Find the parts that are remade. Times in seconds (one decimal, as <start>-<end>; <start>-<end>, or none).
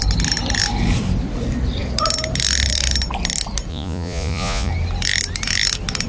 3.7-4.7